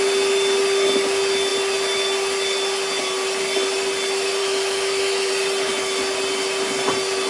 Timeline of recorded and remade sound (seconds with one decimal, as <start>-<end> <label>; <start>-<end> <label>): 0.0-4.4 recorded; 4.4-5.3 remade; 5.3-7.3 recorded